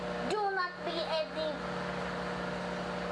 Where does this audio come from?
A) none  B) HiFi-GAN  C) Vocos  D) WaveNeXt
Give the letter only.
A